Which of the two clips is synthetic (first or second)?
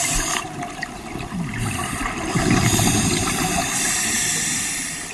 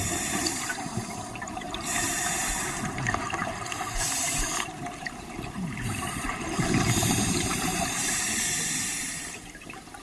second